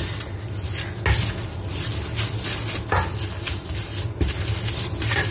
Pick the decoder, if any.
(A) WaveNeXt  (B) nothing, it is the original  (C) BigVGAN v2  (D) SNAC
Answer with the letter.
B